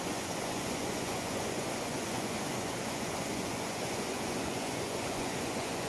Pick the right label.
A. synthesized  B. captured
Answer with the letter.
A